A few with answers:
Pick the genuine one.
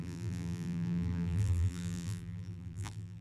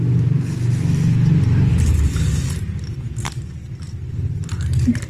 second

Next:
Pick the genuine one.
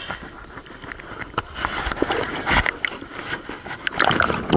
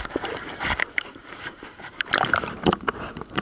first